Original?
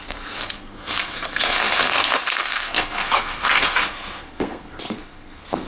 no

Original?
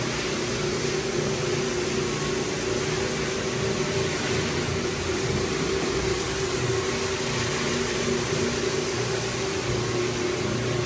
yes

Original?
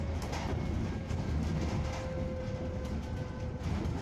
yes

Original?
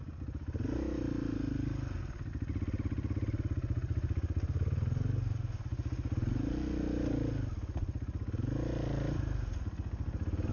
yes